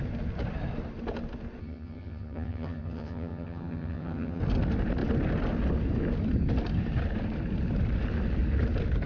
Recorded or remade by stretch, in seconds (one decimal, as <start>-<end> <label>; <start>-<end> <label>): 0.0-1.6 recorded; 1.6-4.4 remade; 4.4-9.1 recorded